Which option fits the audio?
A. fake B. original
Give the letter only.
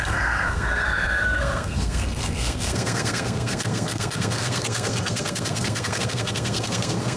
A